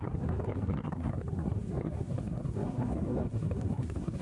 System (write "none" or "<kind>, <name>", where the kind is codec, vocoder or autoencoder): codec, SNAC